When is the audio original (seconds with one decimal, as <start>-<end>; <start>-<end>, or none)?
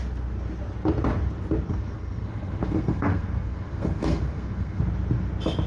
0.0-1.7; 4.8-5.7